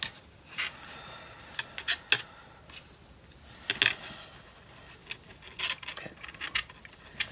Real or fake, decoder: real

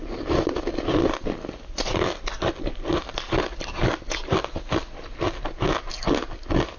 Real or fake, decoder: real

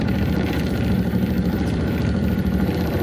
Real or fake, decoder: fake, vocoder, BigVGAN v2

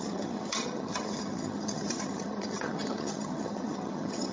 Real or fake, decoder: fake, vocoder, HiFi-GAN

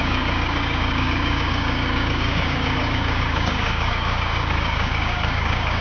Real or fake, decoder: fake, codec, DAC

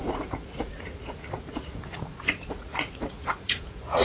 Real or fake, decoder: fake, vocoder, Vocos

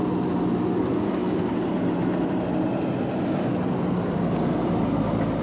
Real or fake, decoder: real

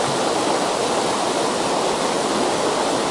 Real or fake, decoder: real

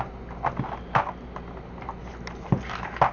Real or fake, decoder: real